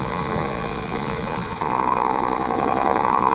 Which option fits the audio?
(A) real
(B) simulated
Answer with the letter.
B